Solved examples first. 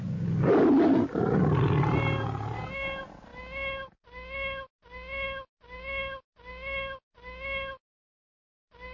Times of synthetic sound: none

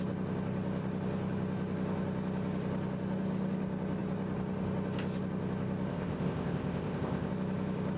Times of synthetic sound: 5.9-7.3 (codec, ZipCodec)